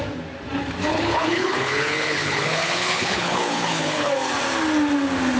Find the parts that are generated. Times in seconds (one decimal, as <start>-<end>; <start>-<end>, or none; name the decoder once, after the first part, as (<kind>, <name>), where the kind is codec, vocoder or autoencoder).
0.9-4.1 (codec, HILCodec)